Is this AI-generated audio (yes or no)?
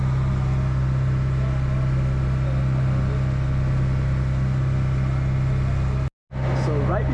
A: no